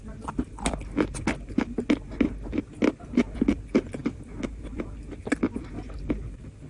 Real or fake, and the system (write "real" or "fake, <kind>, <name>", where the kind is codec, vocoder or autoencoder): real